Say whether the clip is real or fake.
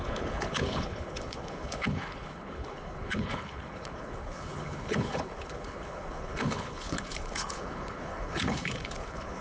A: fake